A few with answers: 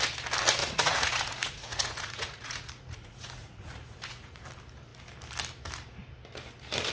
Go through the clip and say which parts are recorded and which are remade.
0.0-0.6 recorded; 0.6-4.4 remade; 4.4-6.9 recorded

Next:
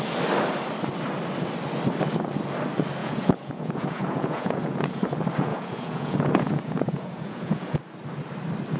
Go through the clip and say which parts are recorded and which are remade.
0.0-3.0 recorded; 3.0-5.0 remade; 5.0-5.5 recorded; 5.5-7.8 remade; 7.8-8.8 recorded

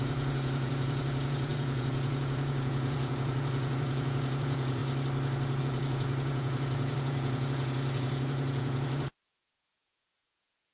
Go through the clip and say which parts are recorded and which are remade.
0.0-4.8 remade; 4.8-5.6 recorded; 5.6-10.7 remade